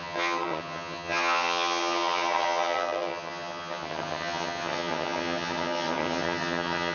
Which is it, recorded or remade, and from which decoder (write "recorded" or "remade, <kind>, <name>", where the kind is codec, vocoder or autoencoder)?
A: remade, vocoder, HiFi-GAN